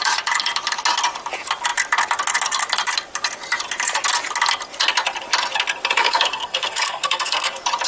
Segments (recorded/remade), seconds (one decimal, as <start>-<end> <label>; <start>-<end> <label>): 0.0-6.0 recorded; 6.0-7.5 remade; 7.5-7.9 recorded